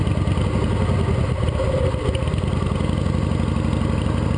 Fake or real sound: real